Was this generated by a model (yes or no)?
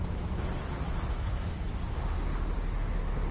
no